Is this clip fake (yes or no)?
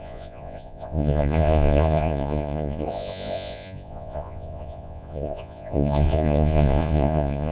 yes